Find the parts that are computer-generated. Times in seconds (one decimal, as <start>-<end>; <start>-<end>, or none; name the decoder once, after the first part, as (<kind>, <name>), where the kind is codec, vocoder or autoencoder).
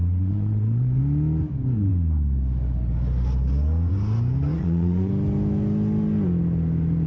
0.0-1.0 (vocoder, Vocos); 4.5-5.1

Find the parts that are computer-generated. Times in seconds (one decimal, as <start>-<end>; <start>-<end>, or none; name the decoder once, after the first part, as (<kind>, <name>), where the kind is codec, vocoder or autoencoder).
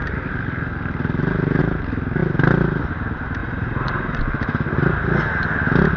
3.4-4.2 (vocoder, Vocos)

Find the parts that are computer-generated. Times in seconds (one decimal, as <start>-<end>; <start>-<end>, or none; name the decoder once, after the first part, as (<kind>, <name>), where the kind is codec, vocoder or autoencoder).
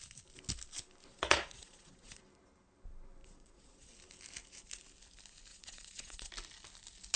1.1-2.2 (vocoder, Vocos); 3.2-3.9; 5.5-6.3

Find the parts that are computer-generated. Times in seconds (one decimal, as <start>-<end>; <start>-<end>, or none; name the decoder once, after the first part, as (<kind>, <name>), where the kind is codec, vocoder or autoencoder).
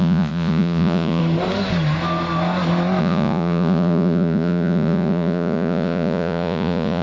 0.0-1.2 (vocoder, Vocos); 3.0-7.0